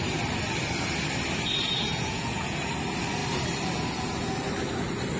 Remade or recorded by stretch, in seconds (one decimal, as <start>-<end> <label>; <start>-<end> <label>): 0.0-1.9 recorded; 1.9-2.7 remade; 2.7-5.2 recorded